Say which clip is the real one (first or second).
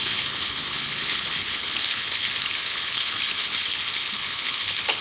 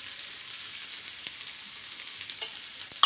second